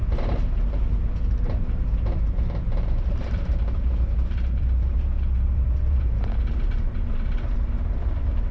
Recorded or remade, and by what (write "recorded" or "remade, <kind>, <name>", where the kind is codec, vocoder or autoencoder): remade, vocoder, BigVGAN v2